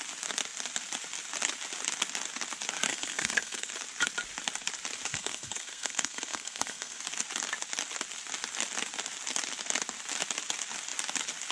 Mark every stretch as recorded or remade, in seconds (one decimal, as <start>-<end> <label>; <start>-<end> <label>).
0.0-2.9 recorded; 2.9-3.7 remade; 3.7-5.1 recorded; 5.1-7.0 remade; 7.0-11.5 recorded